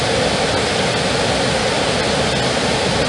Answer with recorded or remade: recorded